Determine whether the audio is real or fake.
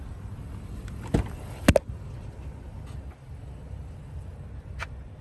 real